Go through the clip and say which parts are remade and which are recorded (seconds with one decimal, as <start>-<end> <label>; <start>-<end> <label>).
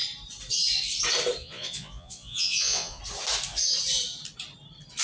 0.0-1.4 recorded; 1.4-3.0 remade; 3.0-5.0 recorded